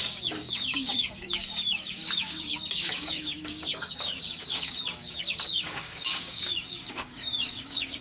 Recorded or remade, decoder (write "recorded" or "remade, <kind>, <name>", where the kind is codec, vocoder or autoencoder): remade, codec, DAC